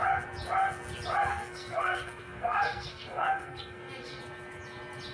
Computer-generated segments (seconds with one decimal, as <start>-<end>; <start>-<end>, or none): 1.3-4.2